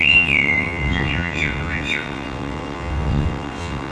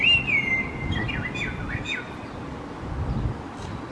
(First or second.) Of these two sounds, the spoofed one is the first